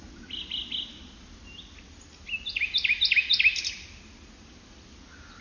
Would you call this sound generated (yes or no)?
no